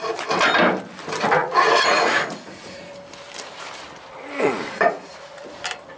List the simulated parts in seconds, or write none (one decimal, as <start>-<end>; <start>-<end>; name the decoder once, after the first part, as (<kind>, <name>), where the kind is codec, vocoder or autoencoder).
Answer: 1.4-2.9 (vocoder, Vocos)